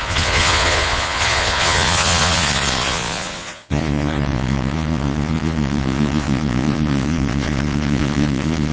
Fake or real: fake